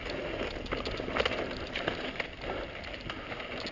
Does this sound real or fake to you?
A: real